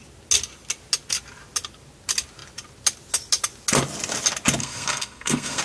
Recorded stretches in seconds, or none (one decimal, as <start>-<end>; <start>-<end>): 0.0-4.6